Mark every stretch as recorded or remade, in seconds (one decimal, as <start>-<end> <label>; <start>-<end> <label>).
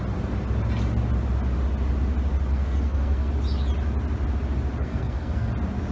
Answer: 0.0-2.5 recorded; 2.5-3.3 remade; 3.3-4.8 recorded; 4.8-5.5 remade; 5.5-5.9 recorded